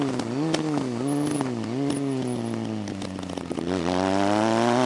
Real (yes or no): yes